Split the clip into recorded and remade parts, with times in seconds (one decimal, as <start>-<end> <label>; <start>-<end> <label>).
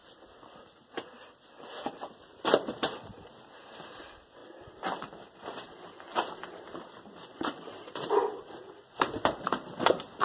0.0-10.2 recorded